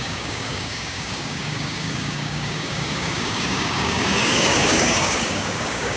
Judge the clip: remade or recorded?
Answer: remade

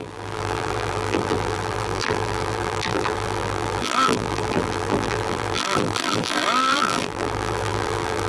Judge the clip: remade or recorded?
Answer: remade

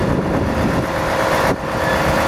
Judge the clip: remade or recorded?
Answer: recorded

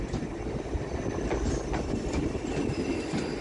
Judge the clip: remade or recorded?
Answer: recorded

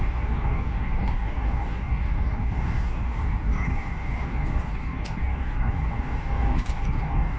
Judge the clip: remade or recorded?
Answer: remade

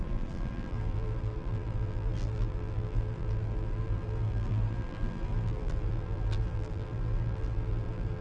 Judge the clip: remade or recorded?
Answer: remade